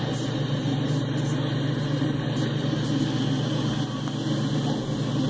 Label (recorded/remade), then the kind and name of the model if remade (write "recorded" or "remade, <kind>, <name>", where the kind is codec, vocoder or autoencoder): recorded